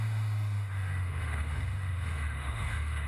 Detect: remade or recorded remade